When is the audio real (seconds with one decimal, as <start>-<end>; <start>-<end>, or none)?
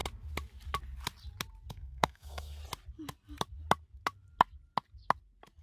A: 0.0-1.7; 2.6-5.6